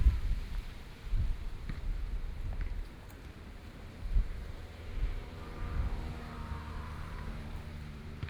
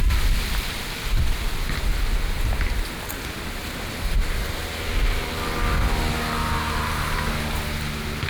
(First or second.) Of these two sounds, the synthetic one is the first